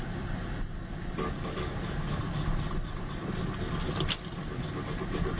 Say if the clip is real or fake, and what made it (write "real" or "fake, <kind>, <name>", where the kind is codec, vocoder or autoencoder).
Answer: real